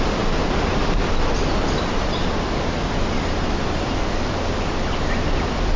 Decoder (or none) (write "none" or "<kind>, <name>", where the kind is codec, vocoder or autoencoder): none